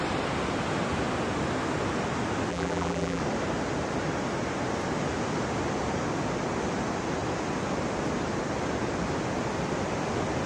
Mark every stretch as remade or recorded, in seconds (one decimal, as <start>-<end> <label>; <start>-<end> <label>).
0.0-2.5 recorded; 2.5-3.2 remade; 3.2-10.5 recorded